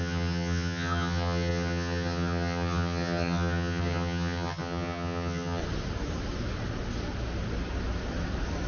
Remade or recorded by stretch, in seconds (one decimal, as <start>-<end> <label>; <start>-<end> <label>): 0.0-5.6 remade; 5.6-8.7 recorded